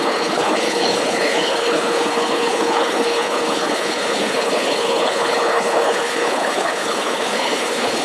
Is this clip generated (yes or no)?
yes